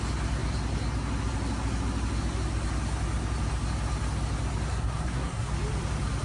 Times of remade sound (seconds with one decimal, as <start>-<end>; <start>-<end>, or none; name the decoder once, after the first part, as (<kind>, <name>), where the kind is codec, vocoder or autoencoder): 4.7-5.5 (codec, SNAC)